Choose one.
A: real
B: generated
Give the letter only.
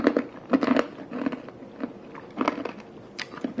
A